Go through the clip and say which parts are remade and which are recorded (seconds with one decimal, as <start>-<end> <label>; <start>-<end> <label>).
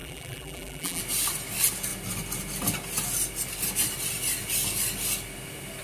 0.0-1.0 remade; 1.0-5.8 recorded